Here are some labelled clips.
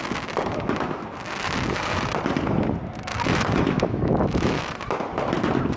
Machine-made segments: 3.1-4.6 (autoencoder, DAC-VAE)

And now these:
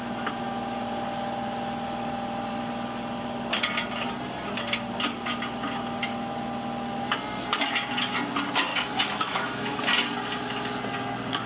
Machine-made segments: 8.7-9.8 (autoencoder, DAC-VAE)

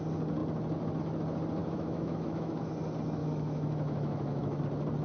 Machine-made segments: 1.6-2.7 (autoencoder, DAC-VAE); 3.2-4.6

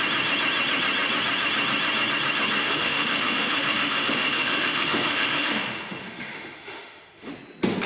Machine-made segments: 2.6-7.3 (autoencoder, DAC-VAE)

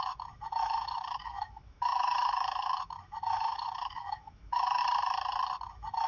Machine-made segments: 0.0-4.8 (autoencoder, DAC-VAE); 5.6-6.1

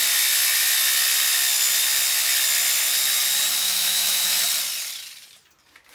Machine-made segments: 3.6-4.4 (autoencoder, DAC-VAE)

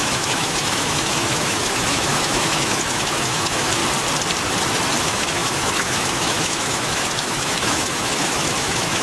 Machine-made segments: 0.0-3.8 (autoencoder, DAC-VAE); 5.0-9.0